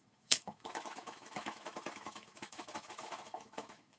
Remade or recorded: remade